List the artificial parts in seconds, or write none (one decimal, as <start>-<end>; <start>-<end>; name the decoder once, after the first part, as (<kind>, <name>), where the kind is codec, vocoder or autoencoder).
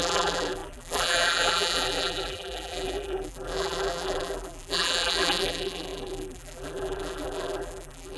0.0-8.2 (vocoder, BigVGAN v2)